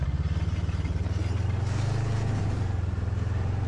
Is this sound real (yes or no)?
yes